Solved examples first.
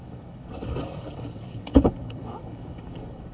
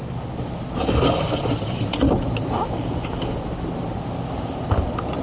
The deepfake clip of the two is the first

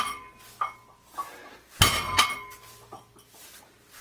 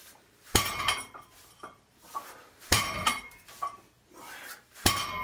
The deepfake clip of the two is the second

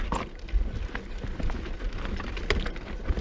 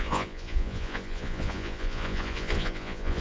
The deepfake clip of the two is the second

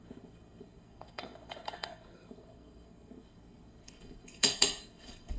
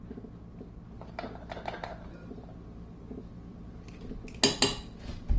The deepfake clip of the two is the first